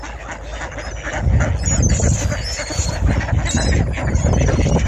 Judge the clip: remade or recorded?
recorded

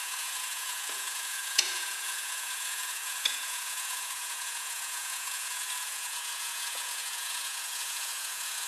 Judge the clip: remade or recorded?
remade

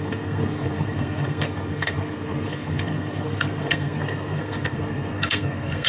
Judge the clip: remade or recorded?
remade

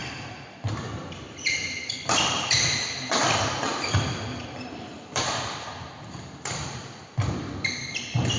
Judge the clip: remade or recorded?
remade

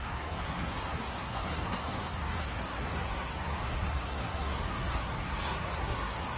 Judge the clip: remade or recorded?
remade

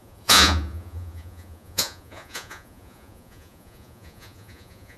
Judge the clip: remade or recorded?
remade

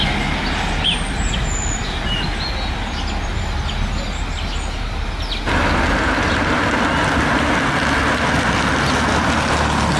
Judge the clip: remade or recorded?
recorded